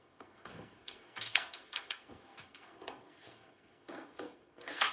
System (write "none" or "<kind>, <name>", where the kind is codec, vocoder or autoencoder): codec, SNAC